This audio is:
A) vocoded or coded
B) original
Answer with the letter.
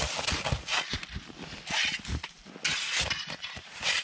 B